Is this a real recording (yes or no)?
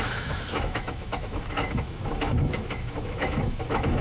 no